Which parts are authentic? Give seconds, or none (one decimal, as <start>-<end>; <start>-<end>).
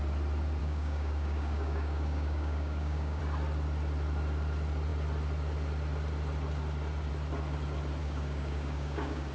0.0-0.6; 3.2-8.0